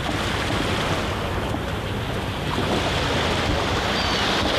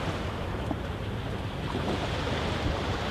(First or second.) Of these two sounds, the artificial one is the second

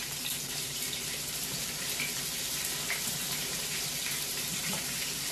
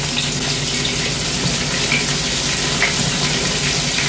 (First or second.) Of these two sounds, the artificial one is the first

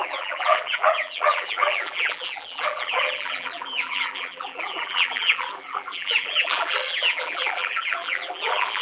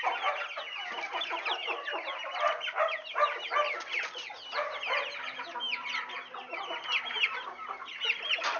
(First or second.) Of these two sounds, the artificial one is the first